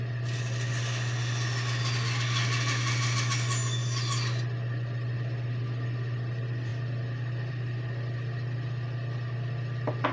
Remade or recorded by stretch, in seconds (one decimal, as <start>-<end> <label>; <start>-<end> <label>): 0.0-10.1 recorded